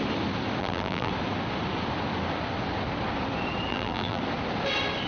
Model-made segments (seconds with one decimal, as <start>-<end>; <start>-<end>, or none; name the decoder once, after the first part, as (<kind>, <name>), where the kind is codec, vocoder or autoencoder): 0.6-1.1 (vocoder, BigVGAN v2); 3.7-4.2